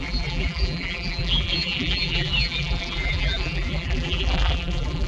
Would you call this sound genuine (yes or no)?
no